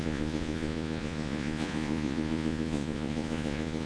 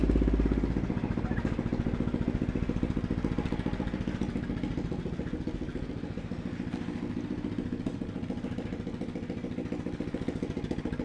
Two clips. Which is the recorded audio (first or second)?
second